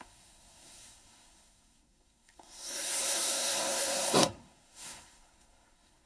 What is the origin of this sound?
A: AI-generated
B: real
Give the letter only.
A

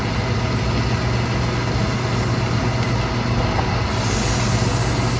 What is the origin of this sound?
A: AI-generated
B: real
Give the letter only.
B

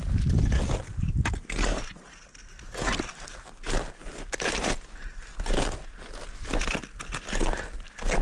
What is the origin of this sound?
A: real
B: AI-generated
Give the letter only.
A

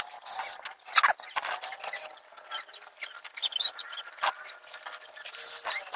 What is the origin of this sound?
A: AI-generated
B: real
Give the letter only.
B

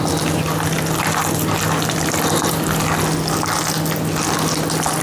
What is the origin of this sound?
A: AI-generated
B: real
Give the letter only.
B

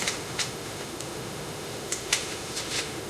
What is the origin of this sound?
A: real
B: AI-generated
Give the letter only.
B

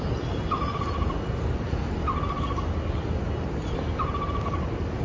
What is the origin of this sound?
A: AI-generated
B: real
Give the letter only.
B